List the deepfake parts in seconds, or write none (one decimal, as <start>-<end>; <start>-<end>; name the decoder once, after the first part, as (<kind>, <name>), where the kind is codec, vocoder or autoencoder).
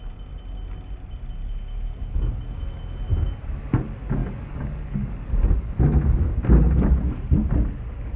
4.2-5.5 (codec, DAC)